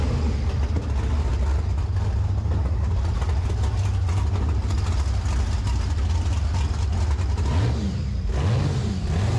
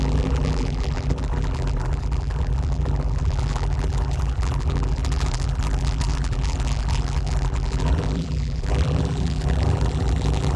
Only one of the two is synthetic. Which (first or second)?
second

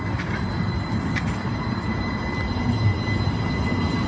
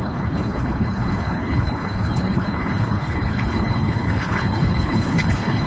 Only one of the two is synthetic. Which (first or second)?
second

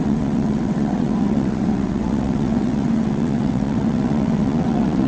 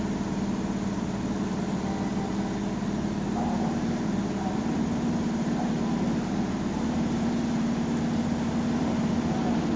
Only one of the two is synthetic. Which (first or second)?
first